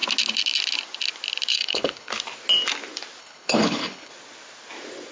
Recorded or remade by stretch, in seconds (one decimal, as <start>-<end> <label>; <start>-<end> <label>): 0.0-1.5 recorded; 1.5-2.1 remade; 2.1-3.2 recorded; 3.2-4.1 remade; 4.1-5.1 recorded